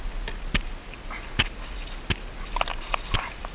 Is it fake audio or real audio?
real